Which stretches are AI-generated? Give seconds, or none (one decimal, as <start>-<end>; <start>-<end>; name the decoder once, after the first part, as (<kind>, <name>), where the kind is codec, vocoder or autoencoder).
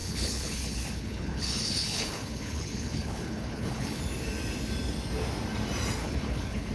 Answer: 0.0-4.0 (codec, HILCodec); 6.0-6.7